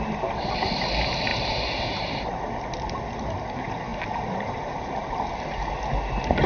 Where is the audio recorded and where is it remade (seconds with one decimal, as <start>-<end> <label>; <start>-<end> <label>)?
0.0-6.5 recorded